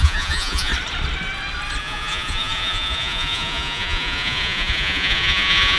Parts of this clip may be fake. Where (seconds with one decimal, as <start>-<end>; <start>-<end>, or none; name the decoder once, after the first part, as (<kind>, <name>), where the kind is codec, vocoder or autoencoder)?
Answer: 0.0-0.7 (vocoder, Vocos); 1.8-5.8